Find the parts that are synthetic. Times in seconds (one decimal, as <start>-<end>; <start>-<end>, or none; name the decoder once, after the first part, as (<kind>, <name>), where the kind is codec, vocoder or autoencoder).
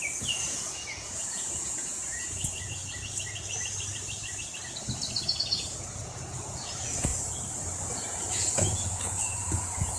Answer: 0.0-2.8 (vocoder, Vocos); 5.4-7.1; 8.3-10.0